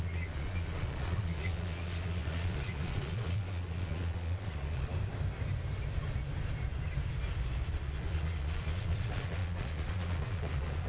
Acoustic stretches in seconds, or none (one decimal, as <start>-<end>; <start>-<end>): 4.9-7.7